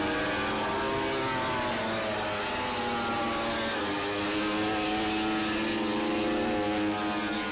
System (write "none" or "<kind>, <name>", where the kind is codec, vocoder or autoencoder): none